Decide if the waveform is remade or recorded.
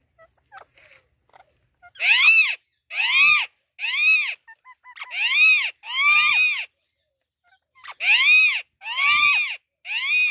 recorded